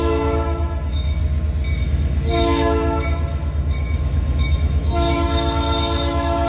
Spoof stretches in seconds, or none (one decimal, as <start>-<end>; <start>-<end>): 0.0-1.2; 1.8-6.5